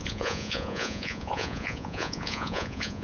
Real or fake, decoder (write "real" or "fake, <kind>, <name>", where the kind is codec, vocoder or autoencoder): fake, vocoder, Vocos